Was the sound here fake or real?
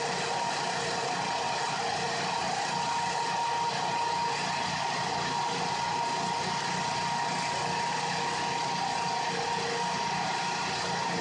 real